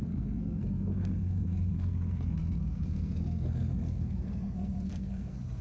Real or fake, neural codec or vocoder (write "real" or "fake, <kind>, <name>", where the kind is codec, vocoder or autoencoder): fake, codec, SNAC